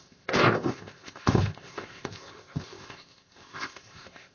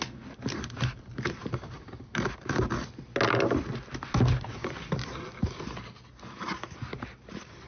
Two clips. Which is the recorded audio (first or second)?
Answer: second